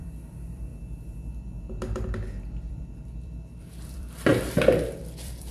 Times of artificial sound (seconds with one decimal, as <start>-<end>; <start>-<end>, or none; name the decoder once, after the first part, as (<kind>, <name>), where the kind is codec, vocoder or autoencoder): 0.0-0.7 (vocoder, BigVGAN v2); 2.7-5.5